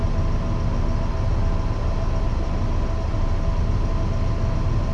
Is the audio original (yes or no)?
yes